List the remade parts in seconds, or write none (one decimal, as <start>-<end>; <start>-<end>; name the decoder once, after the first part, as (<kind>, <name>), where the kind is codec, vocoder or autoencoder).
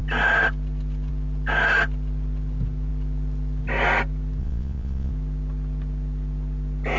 4.4-5.1 (vocoder, Vocos)